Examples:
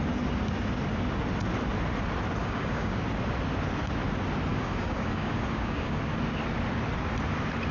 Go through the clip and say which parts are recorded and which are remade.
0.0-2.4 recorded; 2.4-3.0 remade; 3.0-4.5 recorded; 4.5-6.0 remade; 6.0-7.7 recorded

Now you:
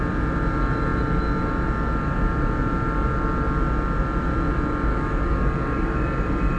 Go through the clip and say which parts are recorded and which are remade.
0.0-4.9 recorded; 4.9-6.0 remade; 6.0-6.6 recorded